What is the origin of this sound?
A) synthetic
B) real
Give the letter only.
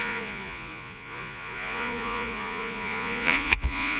A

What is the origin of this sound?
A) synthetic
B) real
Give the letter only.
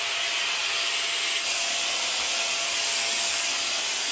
B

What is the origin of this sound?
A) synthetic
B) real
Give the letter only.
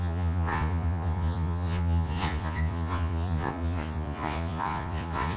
A